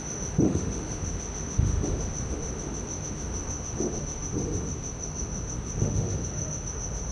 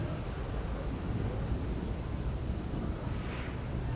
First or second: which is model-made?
first